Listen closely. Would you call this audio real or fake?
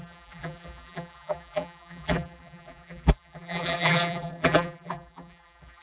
fake